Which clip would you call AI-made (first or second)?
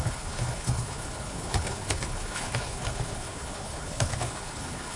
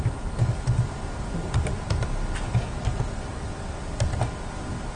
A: first